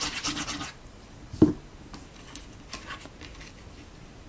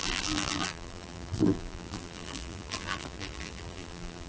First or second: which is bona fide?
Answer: first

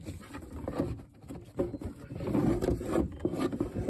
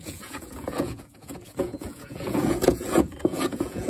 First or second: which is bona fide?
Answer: first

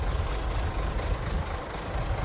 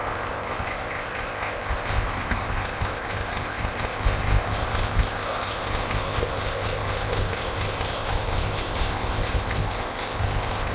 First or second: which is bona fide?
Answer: first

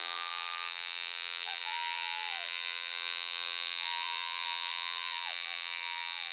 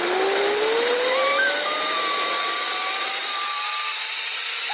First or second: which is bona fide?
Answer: second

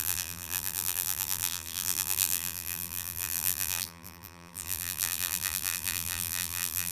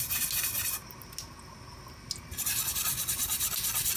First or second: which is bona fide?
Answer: second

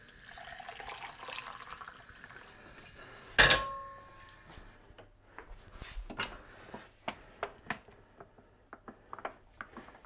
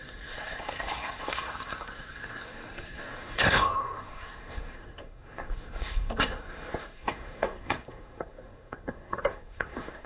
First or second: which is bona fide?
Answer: first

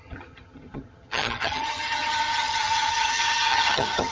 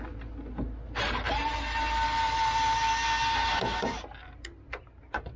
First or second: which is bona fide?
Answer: second